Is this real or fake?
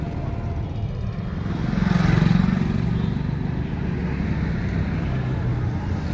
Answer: real